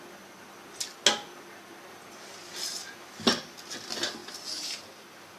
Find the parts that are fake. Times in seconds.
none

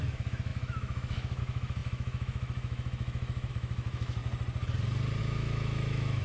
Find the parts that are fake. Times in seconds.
0.0-4.2 (autoencoder, DAC-VAE); 5.2-6.2

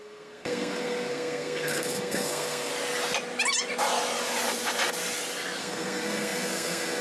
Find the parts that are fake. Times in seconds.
0.0-2.7 (codec, SNAC); 5.6-7.0

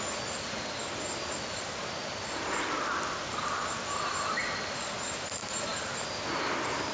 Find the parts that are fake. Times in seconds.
none

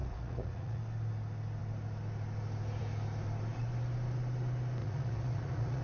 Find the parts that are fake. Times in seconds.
0.0-0.8 (vocoder, Vocos); 4.8-5.8

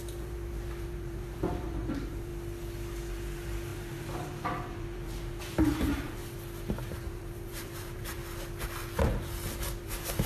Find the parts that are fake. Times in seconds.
0.0-2.3 (vocoder, BigVGAN v2); 3.1-6.2; 6.7-8.2; 9.8-10.3